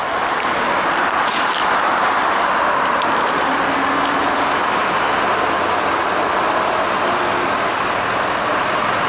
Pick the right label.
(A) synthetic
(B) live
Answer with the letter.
B